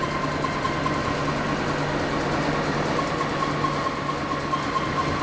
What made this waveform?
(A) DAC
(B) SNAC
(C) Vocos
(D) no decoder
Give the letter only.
D